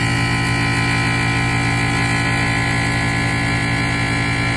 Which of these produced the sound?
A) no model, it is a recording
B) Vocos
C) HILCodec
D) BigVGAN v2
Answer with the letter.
A